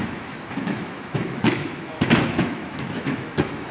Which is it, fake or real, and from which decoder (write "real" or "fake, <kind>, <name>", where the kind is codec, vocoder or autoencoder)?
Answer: fake, autoencoder, DAC-VAE